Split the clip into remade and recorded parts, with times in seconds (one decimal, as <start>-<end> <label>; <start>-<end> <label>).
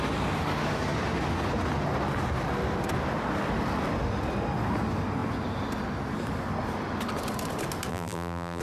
0.0-7.9 recorded; 7.9-8.6 remade